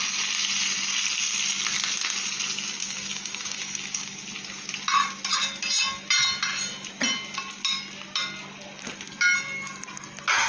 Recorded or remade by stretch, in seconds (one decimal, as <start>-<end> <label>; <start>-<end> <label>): 0.0-2.8 recorded; 2.8-4.2 remade; 4.2-10.5 recorded